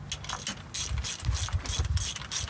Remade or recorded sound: recorded